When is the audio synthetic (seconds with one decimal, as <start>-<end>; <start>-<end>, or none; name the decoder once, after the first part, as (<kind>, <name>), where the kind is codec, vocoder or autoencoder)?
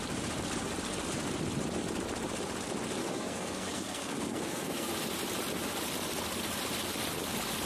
3.0-4.9 (codec, SNAC)